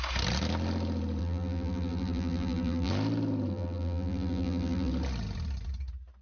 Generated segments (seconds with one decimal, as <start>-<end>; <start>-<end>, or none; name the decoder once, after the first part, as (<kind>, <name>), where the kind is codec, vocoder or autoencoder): 1.2-2.9 (vocoder, BigVGAN v2); 3.5-4.9